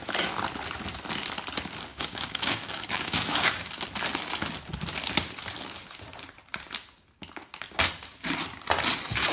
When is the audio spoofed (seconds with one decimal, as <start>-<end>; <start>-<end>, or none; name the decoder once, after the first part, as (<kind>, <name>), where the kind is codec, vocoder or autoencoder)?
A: 1.9-3.8 (codec, DAC)